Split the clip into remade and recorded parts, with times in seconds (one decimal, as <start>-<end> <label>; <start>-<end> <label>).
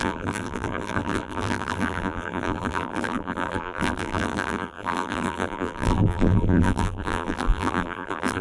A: 0.0-8.4 remade